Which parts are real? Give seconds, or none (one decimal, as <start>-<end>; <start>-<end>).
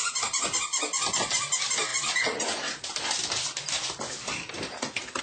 0.0-5.2